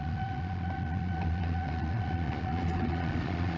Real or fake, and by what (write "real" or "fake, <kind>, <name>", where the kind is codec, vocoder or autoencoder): fake, vocoder, Vocos